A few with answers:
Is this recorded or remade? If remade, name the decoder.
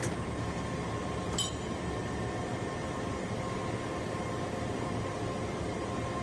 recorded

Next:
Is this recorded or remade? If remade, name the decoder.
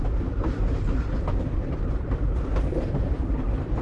remade, vocoder, BigVGAN v2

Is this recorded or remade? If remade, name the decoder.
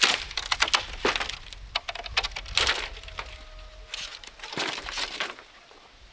recorded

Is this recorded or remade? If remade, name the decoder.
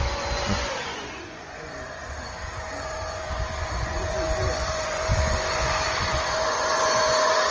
remade, vocoder, Vocos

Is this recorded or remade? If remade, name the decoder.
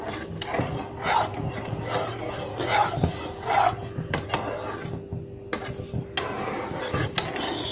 recorded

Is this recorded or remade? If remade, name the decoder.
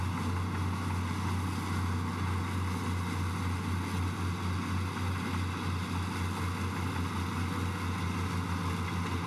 recorded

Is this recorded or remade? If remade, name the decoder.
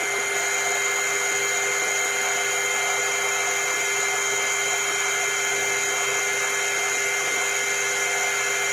recorded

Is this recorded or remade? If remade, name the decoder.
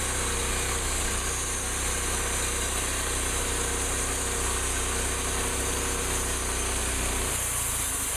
recorded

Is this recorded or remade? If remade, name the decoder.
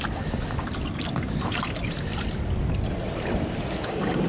recorded